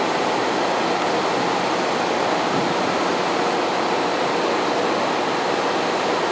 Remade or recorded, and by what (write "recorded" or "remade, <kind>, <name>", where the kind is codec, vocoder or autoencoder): recorded